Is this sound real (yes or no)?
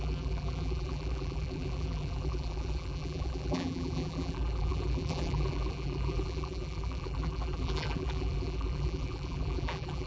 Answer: no